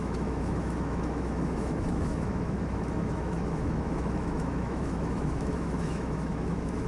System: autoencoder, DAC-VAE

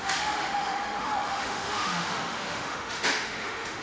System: autoencoder, DAC-VAE